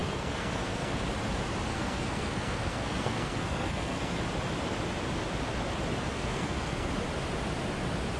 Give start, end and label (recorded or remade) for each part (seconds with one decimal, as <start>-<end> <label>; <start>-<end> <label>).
0.0-0.9 remade; 0.9-1.7 recorded; 1.7-4.2 remade; 4.2-6.1 recorded; 6.1-6.9 remade; 6.9-8.2 recorded